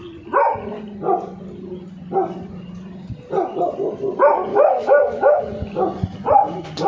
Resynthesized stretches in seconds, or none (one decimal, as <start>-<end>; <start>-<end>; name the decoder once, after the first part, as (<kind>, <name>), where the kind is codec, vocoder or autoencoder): 4.5-5.4 (autoencoder, DAC-VAE)